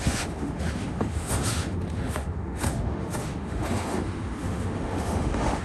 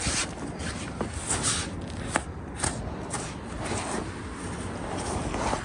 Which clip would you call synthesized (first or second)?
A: first